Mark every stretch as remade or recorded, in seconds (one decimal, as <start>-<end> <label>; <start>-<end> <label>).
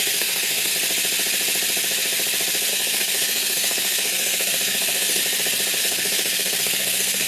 0.0-0.7 remade; 0.7-2.7 recorded; 2.7-5.2 remade; 5.2-5.8 recorded; 5.8-7.3 remade